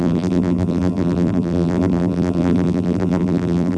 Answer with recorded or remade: remade